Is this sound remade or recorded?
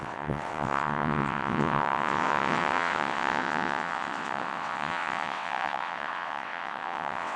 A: remade